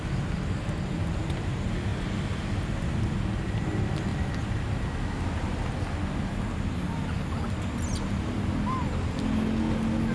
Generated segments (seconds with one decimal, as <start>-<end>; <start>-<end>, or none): none